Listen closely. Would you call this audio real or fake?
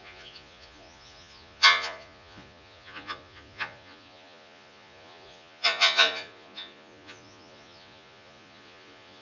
fake